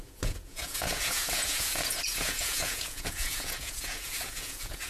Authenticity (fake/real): fake